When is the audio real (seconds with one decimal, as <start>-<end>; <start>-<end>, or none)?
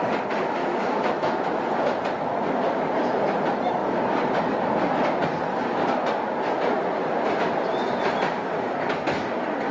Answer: 0.0-0.6; 1.6-9.7